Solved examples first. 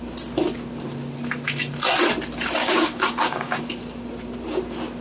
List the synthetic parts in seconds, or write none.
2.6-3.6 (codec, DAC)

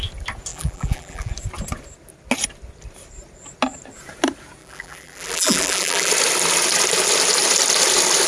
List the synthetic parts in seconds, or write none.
0.5-1.3 (vocoder, BigVGAN v2); 4.6-6.1